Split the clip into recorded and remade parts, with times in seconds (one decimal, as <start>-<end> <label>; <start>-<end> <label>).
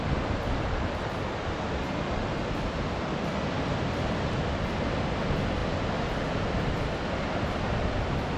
0.0-8.4 recorded